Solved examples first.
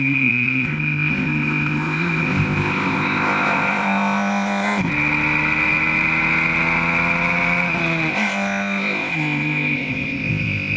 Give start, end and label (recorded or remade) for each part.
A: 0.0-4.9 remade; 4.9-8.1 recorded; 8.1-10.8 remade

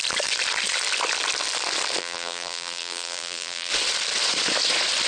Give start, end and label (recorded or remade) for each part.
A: 0.0-2.0 recorded; 2.0-3.7 remade; 3.7-5.1 recorded

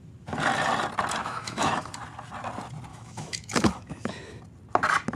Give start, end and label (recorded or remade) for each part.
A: 0.0-1.2 recorded; 1.2-1.9 remade; 1.9-2.9 recorded; 2.9-4.4 remade; 4.4-5.2 recorded

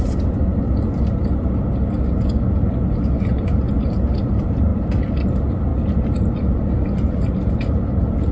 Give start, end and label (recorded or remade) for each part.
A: 0.0-0.5 remade; 0.5-3.7 recorded; 3.7-5.7 remade; 5.7-8.3 recorded

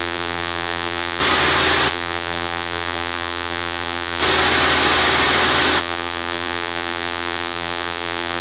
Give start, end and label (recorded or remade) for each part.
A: 0.0-1.2 remade; 1.2-1.9 recorded; 1.9-4.2 remade; 4.2-5.8 recorded; 5.8-8.4 remade